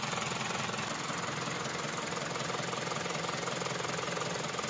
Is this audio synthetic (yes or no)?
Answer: no